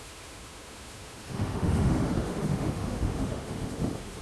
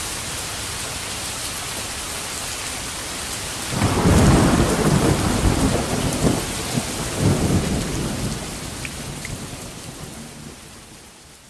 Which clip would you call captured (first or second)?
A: second